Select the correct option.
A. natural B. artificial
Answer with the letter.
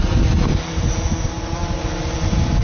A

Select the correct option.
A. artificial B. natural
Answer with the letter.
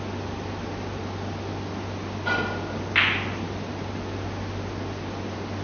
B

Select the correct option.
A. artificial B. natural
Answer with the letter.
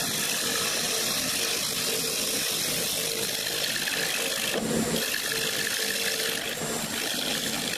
B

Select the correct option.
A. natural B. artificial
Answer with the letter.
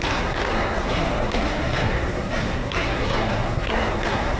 B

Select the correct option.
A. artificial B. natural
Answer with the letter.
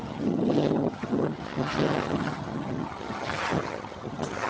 A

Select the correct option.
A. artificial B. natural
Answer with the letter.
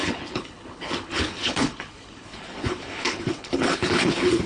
A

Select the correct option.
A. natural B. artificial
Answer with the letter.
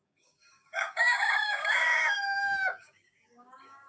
B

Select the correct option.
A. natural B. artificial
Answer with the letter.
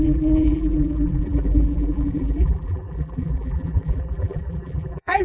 B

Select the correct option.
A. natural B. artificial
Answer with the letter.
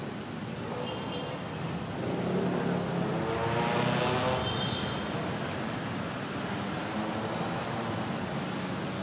A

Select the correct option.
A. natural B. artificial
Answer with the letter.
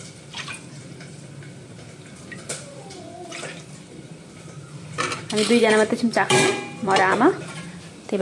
B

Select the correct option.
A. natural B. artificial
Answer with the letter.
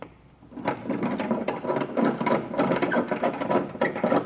A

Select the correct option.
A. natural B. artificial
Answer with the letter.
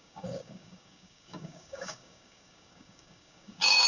B